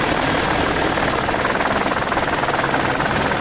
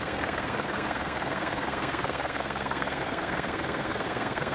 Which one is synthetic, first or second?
second